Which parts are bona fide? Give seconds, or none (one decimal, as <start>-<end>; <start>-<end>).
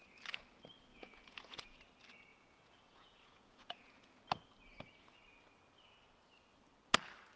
0.0-0.9; 1.8-2.3; 4.2-7.4